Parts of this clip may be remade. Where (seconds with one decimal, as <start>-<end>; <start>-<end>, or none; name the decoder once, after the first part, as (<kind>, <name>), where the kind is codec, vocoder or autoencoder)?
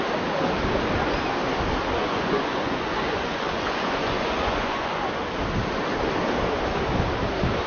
2.0-5.0 (vocoder, Vocos)